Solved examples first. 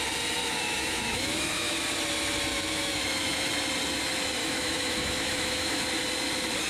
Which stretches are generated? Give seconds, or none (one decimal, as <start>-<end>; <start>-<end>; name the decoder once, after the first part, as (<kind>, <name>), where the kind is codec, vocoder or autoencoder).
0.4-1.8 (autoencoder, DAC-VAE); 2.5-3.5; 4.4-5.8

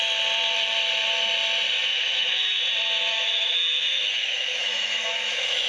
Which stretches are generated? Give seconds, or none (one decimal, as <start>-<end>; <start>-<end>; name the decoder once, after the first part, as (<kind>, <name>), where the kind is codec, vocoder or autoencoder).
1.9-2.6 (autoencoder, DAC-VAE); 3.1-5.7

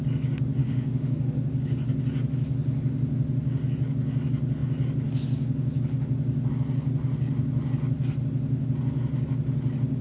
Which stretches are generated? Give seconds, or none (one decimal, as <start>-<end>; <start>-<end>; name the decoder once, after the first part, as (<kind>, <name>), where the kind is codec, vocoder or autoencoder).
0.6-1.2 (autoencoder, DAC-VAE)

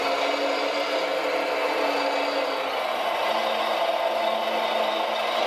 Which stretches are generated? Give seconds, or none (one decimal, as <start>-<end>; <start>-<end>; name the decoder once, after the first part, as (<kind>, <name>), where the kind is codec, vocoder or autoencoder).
none

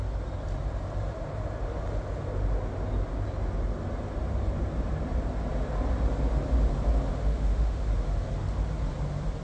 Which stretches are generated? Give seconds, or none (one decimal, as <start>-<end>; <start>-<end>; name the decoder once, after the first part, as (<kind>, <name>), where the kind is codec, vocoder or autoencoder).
7.1-7.8 (autoencoder, DAC-VAE)

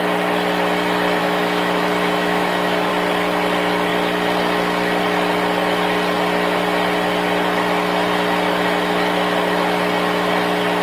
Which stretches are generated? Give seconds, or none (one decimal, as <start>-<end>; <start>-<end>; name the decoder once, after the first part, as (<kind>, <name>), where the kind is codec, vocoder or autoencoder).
1.2-2.9 (autoencoder, DAC-VAE)